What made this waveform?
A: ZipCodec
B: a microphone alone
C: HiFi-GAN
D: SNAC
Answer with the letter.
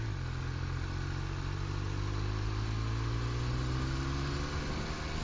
B